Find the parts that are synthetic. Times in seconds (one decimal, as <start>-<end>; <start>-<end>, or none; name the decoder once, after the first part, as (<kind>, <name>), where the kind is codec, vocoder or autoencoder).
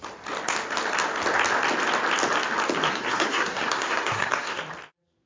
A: 2.9-4.6 (codec, SNAC)